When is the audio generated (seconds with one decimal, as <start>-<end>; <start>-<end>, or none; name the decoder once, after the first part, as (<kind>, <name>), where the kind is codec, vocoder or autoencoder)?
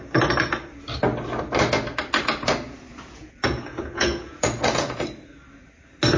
2.9-5.0 (vocoder, Vocos)